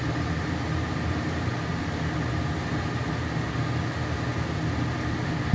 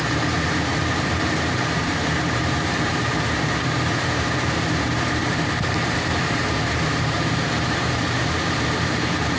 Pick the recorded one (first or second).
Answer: first